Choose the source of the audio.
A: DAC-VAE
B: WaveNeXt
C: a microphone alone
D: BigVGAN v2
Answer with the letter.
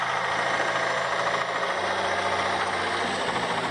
C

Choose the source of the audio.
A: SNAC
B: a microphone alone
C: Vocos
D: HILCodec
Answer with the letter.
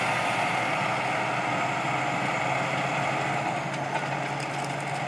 B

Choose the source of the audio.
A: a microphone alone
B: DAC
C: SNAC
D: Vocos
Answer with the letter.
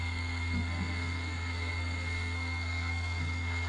C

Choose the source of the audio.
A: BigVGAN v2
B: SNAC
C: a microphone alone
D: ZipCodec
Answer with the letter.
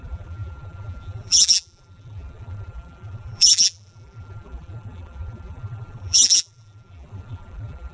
A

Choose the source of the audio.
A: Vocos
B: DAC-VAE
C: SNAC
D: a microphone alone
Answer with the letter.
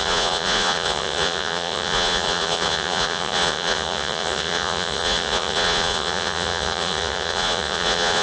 A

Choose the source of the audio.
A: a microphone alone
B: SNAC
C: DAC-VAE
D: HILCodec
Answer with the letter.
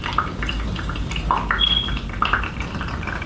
A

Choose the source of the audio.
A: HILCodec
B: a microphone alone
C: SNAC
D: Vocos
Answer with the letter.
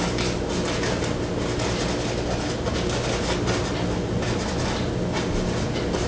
B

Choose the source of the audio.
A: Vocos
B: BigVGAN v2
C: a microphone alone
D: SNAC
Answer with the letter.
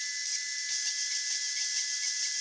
C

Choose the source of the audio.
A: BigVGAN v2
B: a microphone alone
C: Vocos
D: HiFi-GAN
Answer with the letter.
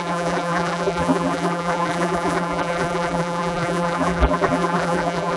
A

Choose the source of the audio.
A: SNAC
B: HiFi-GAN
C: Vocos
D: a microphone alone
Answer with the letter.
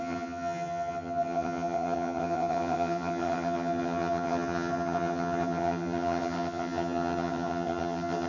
B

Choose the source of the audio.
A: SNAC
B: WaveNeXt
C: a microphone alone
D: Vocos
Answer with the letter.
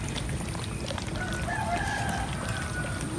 C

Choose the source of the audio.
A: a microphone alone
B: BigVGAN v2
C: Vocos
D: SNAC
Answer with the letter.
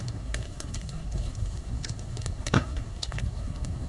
D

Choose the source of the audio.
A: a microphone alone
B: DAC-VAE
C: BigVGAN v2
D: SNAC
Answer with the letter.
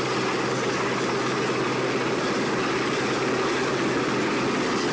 A